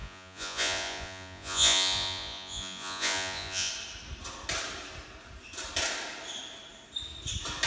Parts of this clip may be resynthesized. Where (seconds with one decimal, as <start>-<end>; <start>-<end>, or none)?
0.0-3.7